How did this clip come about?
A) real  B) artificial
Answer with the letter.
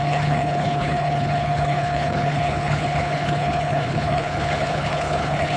B